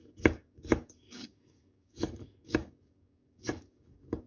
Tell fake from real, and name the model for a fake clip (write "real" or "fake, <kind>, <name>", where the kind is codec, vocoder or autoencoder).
fake, codec, DAC